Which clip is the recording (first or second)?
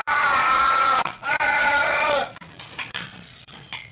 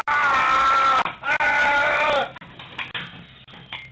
second